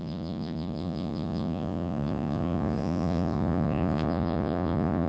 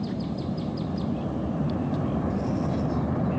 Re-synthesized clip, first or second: first